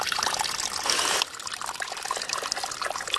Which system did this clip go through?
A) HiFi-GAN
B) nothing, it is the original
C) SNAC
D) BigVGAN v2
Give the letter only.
D